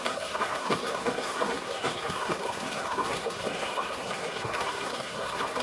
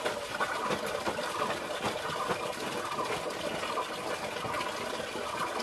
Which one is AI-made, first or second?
first